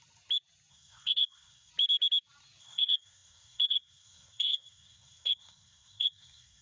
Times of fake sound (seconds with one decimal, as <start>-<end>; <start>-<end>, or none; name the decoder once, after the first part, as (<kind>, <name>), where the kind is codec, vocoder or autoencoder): 0.7-1.7 (codec, SNAC); 2.6-6.6